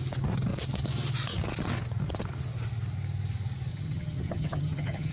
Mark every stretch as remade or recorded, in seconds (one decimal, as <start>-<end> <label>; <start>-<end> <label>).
0.0-3.7 recorded; 3.7-5.1 remade